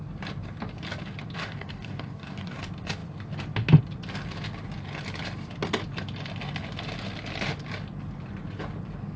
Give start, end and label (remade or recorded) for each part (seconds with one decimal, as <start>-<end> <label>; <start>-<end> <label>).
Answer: 0.0-1.4 recorded; 1.4-2.6 remade; 2.6-9.2 recorded